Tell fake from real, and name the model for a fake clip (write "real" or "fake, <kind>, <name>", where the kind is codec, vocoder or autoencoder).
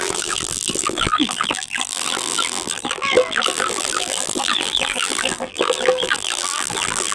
fake, vocoder, BigVGAN v2